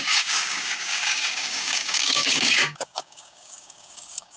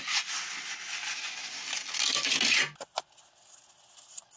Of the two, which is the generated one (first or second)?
first